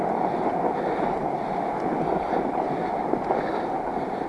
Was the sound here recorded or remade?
recorded